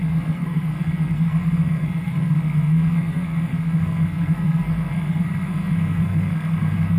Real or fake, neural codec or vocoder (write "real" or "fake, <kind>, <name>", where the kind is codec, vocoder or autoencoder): fake, codec, SNAC